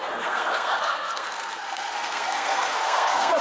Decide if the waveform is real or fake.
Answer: fake